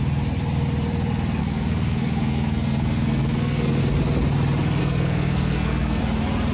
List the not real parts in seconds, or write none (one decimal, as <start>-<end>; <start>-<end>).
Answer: 1.4-3.8; 4.8-6.0